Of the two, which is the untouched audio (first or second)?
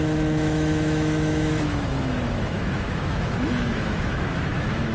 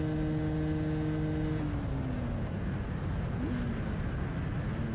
second